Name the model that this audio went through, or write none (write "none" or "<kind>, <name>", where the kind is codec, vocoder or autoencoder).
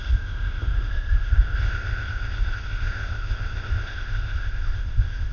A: codec, ZipCodec